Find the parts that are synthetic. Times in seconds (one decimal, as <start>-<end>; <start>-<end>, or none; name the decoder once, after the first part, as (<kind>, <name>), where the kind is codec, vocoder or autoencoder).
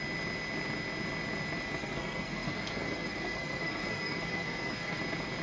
1.8-5.0 (codec, SNAC)